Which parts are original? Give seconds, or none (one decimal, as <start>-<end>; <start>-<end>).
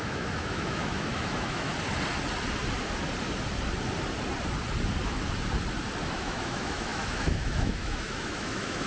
1.7-6.1